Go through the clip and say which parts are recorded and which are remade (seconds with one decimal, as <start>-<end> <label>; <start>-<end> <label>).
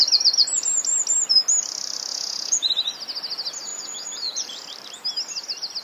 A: 0.0-2.1 recorded; 2.1-2.7 remade; 2.7-3.7 recorded; 3.7-4.7 remade; 4.7-5.8 recorded